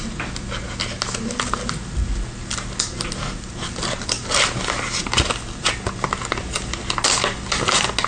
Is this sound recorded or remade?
recorded